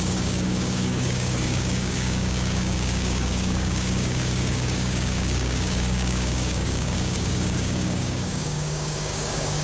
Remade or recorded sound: remade